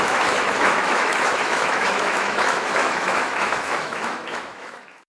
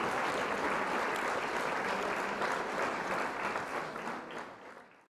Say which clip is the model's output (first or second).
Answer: first